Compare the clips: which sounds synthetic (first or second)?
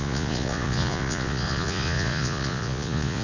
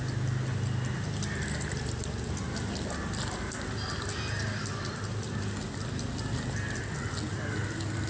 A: first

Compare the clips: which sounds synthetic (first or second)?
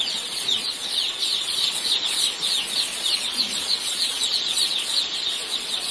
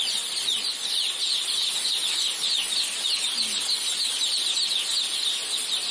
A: first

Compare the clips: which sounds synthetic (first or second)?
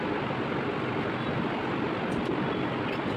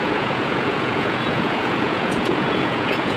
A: second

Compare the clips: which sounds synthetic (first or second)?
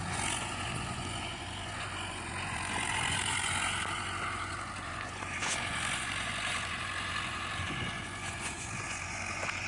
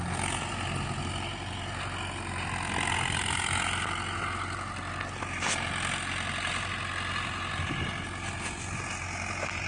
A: first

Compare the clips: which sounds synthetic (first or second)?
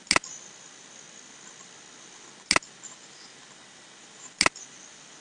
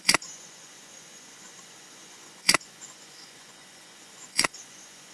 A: second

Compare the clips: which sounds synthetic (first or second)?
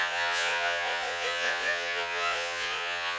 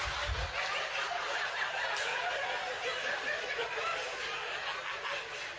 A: first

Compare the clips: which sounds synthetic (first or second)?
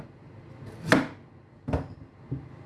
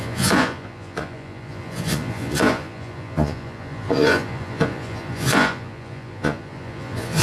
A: second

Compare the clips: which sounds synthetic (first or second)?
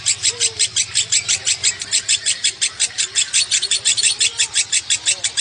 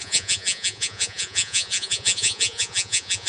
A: second